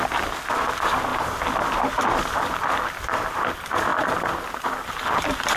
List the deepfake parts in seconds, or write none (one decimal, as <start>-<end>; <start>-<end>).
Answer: 1.1-2.2; 3.9-4.5